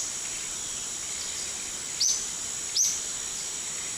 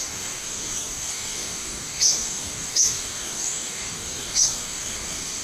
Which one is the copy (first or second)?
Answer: second